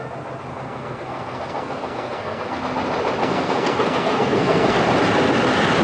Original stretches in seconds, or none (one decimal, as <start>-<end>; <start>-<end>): 0.0-0.5; 2.6-3.2; 4.8-5.8